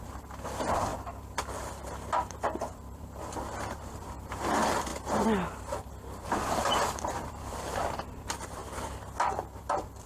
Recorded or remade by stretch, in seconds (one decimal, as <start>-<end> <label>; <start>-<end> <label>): 0.0-4.9 remade; 4.9-5.6 recorded; 5.6-8.6 remade; 8.6-9.6 recorded; 9.6-10.1 remade